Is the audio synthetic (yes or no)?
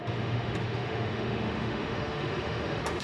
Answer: yes